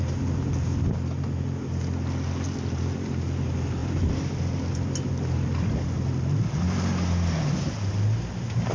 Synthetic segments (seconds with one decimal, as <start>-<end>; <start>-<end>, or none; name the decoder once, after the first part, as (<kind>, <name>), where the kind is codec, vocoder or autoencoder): 3.8-5.1 (vocoder, BigVGAN v2)